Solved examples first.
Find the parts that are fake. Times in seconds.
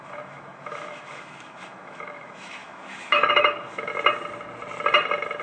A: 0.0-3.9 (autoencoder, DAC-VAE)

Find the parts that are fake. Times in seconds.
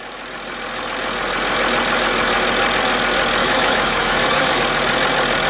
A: 3.4-4.6 (autoencoder, DAC-VAE)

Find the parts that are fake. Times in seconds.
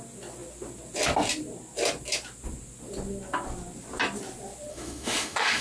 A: 4.7-5.6 (autoencoder, DAC-VAE)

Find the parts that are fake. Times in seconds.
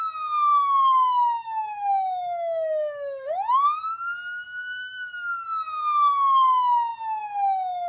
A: 0.5-3.8 (autoencoder, DAC-VAE)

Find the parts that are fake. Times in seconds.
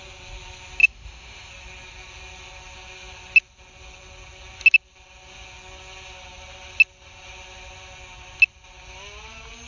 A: 0.8-1.5 (autoencoder, DAC-VAE)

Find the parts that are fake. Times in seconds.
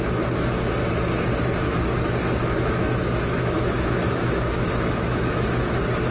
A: 2.4-5.6 (autoencoder, DAC-VAE)